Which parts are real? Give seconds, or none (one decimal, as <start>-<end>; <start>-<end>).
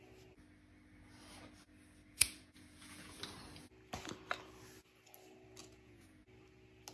0.0-2.1; 3.2-5.6; 6.2-6.9